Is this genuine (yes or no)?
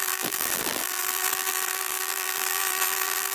no